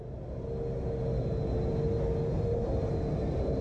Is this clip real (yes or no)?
yes